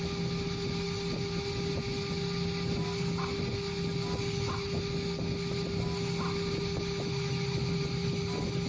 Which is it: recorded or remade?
recorded